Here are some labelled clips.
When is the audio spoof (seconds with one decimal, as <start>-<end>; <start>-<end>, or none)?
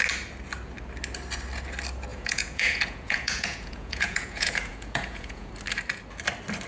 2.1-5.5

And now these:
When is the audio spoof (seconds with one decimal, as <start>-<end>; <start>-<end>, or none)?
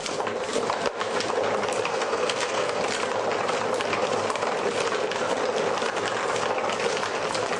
1.9-2.8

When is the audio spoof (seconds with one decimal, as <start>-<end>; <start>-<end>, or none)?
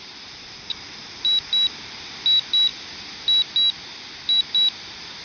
none